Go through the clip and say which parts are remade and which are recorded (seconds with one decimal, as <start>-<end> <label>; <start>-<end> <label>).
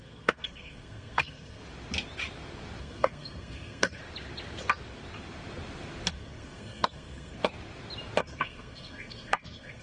0.0-1.6 remade; 1.6-2.8 recorded; 2.8-4.0 remade; 4.0-6.1 recorded; 6.1-7.4 remade; 7.4-8.2 recorded; 8.2-9.8 remade